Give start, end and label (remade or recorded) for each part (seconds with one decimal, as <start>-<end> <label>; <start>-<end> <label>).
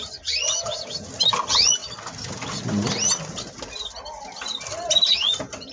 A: 0.0-5.7 recorded